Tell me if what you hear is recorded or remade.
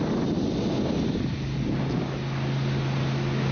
recorded